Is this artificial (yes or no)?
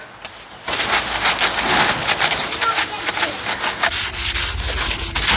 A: no